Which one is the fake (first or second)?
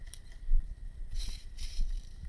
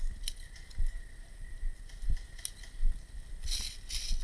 first